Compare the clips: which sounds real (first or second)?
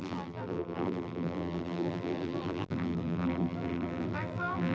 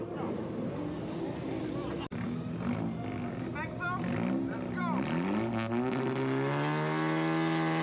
second